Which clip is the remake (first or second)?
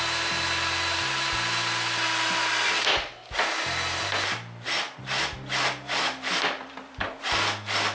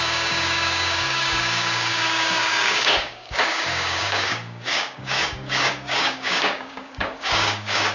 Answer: second